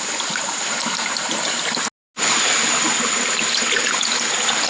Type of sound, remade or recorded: recorded